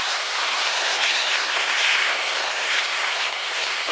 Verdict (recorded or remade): remade